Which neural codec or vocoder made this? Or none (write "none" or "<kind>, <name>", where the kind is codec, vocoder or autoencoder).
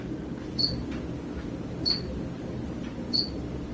none